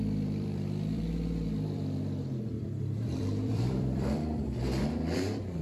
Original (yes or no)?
no